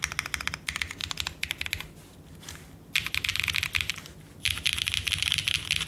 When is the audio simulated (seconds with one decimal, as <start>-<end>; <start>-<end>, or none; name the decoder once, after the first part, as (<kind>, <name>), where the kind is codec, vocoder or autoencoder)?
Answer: none